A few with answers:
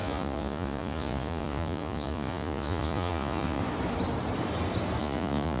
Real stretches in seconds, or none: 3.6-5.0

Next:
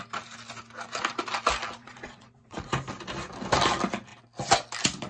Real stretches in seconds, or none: 0.0-1.8; 2.7-5.1

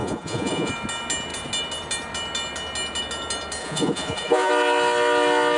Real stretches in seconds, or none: 0.7-3.6; 4.5-5.6

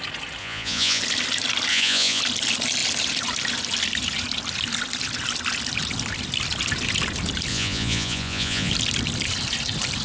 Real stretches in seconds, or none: 0.0-0.4; 1.0-1.7; 2.2-7.5; 8.7-10.0

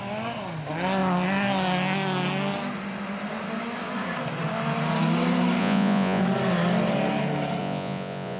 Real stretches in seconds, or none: 0.0-5.6; 6.2-7.6